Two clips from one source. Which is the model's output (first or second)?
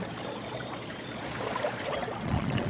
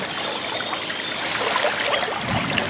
first